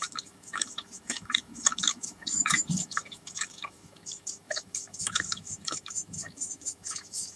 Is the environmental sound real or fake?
fake